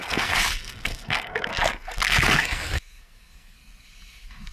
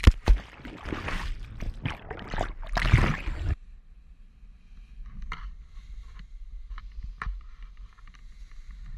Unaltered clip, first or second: second